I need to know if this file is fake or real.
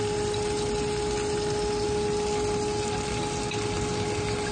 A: real